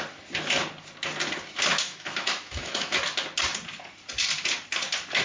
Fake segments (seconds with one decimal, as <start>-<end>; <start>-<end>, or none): 1.7-3.0